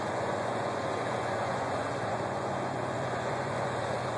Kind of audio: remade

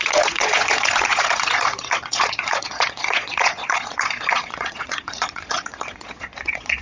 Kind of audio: remade